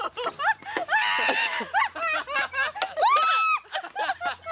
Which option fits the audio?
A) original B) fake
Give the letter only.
A